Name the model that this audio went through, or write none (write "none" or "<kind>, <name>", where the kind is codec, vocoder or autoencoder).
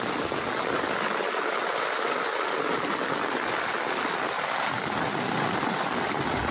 none